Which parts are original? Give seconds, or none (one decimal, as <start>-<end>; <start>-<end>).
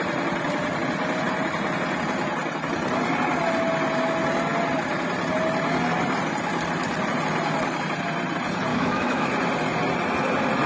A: 0.0-8.7; 9.3-10.7